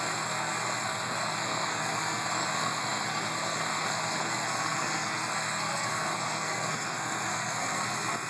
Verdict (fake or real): fake